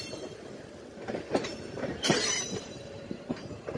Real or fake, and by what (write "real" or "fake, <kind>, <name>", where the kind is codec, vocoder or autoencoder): fake, vocoder, BigVGAN v2